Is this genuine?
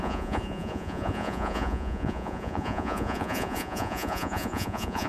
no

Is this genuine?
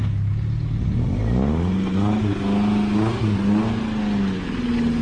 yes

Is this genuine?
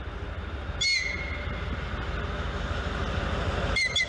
yes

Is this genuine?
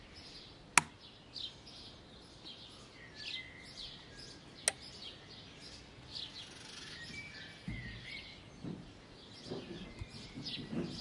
yes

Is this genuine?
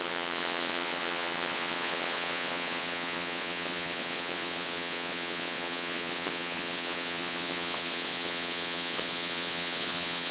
no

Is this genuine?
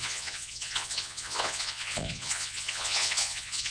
no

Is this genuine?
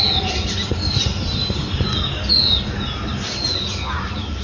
yes